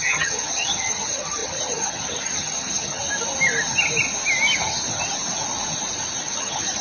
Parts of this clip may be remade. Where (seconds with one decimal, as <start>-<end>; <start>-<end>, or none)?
0.0-3.0; 6.2-6.8